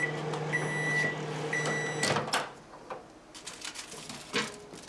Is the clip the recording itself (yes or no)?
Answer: yes